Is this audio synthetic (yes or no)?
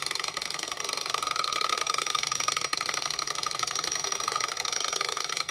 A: yes